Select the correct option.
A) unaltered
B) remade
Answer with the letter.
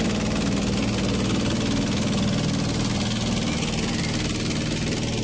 A